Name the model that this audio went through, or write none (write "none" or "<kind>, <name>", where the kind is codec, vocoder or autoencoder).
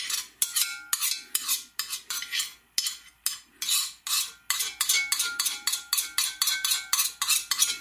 none